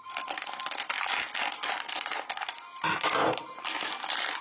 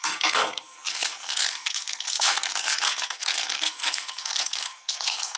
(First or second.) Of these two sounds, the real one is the first